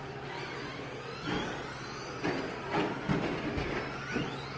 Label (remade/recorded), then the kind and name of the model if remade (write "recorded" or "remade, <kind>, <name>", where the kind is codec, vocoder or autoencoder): recorded